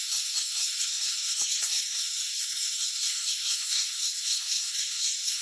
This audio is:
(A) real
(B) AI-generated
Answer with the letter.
B